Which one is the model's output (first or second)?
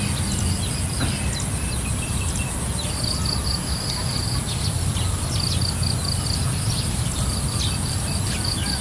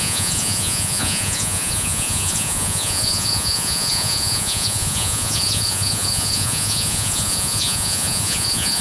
second